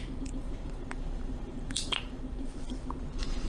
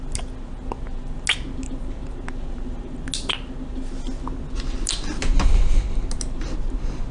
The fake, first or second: first